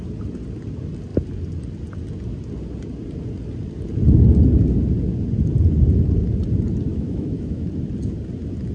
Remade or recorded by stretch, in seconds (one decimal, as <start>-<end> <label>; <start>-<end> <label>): 0.0-6.9 recorded; 6.9-7.7 remade; 7.7-8.7 recorded